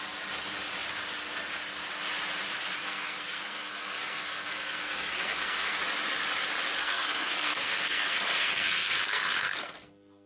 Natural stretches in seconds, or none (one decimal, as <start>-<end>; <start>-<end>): 0.0-2.8; 5.8-6.8